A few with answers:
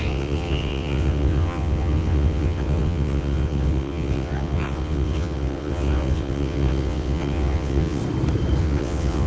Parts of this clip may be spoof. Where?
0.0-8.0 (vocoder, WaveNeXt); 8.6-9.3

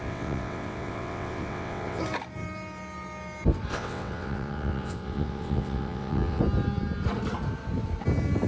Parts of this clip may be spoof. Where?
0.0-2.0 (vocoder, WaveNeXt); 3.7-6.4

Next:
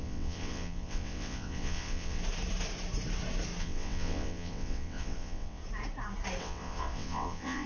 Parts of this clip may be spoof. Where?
0.0-2.2 (vocoder, WaveNeXt); 3.6-5.6; 6.4-7.7

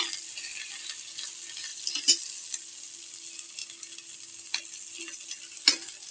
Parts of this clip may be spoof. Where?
none

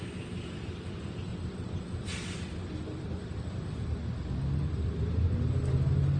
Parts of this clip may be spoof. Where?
none

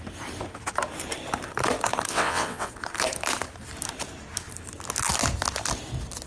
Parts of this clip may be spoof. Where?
2.1-2.7 (vocoder, WaveNeXt)

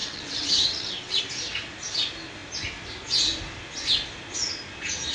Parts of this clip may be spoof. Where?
0.0-1.2 (vocoder, WaveNeXt)

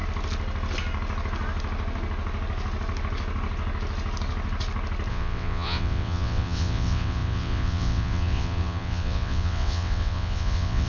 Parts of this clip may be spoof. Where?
5.1-10.9 (vocoder, WaveNeXt)